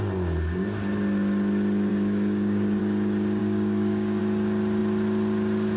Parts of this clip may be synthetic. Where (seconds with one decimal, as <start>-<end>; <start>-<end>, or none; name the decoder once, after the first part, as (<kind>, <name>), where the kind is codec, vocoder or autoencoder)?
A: 1.9-2.8 (codec, DAC); 3.4-4.2